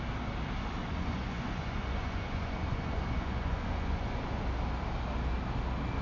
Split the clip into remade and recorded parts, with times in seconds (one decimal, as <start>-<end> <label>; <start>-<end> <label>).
0.0-0.8 recorded; 0.8-4.4 remade; 4.4-6.0 recorded